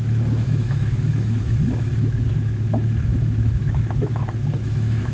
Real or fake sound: fake